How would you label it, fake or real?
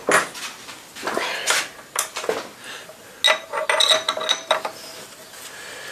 real